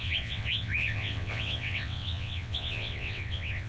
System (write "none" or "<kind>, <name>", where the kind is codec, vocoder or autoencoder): vocoder, WaveNeXt